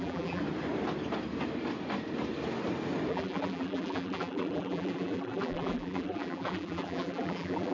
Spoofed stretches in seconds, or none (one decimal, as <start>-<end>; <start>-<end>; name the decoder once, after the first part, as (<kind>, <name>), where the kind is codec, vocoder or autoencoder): 0.0-0.4 (vocoder, BigVGAN v2); 3.1-7.7